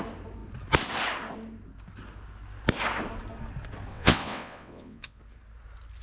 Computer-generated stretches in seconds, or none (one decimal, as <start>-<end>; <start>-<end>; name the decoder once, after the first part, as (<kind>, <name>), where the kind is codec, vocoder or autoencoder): 3.9-5.2 (vocoder, WaveNeXt)